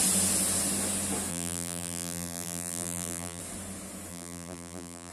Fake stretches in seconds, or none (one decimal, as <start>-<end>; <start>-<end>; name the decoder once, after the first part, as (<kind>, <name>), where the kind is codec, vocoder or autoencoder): 1.3-3.4 (vocoder, BigVGAN v2); 4.1-5.1